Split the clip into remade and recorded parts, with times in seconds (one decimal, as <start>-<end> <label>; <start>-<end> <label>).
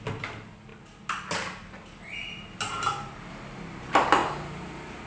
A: 0.0-5.1 recorded